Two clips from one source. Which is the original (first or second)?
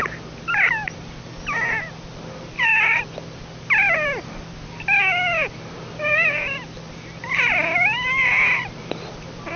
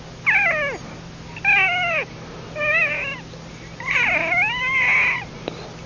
second